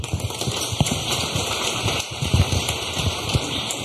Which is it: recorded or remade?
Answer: remade